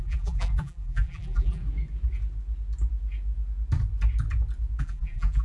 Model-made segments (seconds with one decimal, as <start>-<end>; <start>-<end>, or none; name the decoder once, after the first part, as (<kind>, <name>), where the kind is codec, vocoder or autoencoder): 0.0-1.6 (vocoder, BigVGAN v2); 4.8-5.4